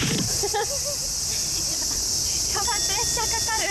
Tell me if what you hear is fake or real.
real